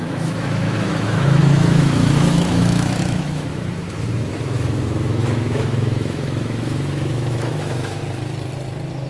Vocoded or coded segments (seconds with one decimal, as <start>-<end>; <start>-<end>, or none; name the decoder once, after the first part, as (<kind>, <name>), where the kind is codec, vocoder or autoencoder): 0.0-8.0 (autoencoder, DAC-VAE)